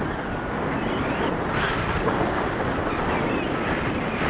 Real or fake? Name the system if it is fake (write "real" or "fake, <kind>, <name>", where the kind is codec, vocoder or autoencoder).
real